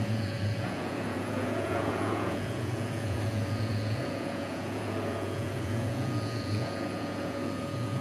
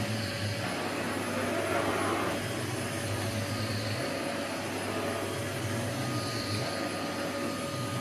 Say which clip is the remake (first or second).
first